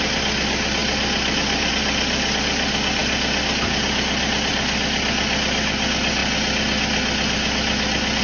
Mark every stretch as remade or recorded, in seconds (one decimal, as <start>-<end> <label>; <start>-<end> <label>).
0.0-8.2 recorded